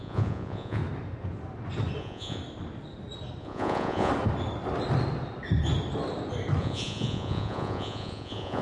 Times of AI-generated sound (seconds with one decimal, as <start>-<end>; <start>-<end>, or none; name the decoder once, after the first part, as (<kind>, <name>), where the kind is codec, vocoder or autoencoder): 0.0-0.8 (vocoder, Vocos); 2.0-2.4; 3.4-4.1; 6.6-8.6